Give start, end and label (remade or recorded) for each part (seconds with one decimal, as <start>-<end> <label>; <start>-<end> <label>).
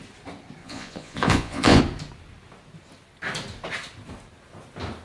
0.0-0.6 recorded; 0.6-1.8 remade; 1.8-5.0 recorded